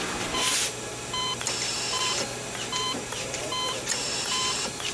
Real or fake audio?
fake